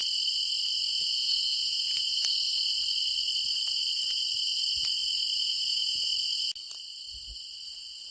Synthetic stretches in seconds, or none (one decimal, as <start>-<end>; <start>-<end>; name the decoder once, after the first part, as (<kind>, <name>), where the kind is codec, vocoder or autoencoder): 0.9-2.3 (vocoder, Vocos); 5.4-6.1